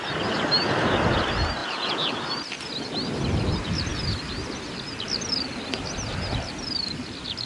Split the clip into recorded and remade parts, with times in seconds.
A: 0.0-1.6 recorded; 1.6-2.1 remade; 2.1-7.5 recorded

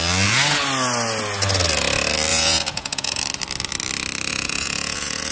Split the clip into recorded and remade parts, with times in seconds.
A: 0.0-2.3 recorded; 2.3-3.2 remade; 3.2-4.3 recorded; 4.3-5.3 remade